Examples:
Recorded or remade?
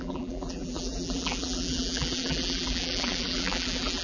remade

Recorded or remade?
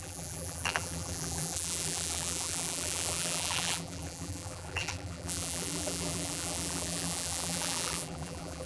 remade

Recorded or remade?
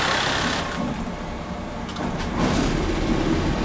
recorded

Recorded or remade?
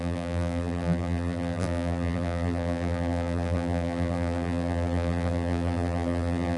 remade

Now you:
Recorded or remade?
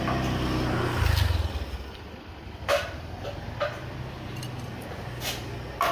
recorded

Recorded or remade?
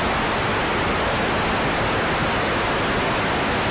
recorded